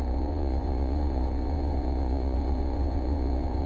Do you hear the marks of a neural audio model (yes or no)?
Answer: yes